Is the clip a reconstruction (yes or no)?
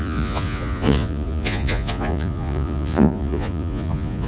yes